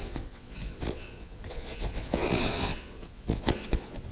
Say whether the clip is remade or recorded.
remade